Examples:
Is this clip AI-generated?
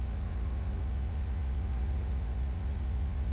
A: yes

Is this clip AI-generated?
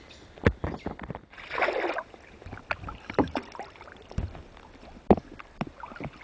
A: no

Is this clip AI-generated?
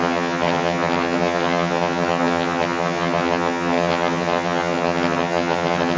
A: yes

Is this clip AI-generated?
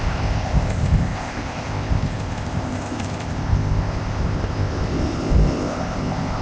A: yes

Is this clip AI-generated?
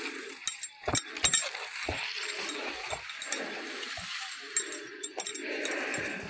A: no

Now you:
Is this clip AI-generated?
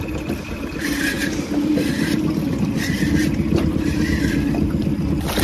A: no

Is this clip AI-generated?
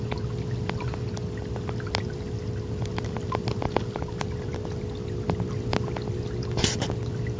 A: no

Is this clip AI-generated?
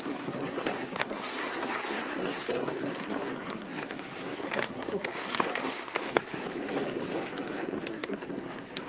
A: yes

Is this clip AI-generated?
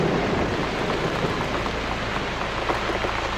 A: no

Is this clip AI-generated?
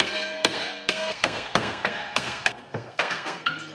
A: yes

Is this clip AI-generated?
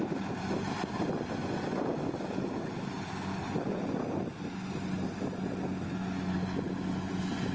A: no